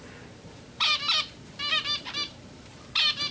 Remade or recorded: remade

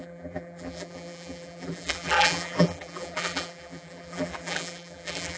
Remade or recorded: remade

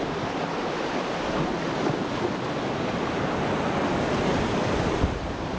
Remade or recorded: recorded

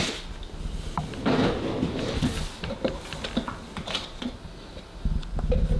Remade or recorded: recorded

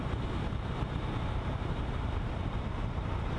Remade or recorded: remade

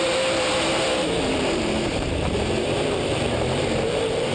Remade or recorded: remade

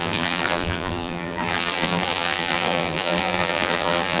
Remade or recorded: remade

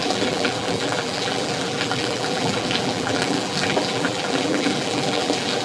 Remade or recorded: remade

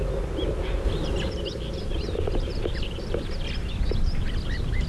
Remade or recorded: remade